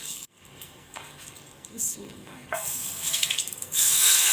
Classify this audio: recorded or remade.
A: remade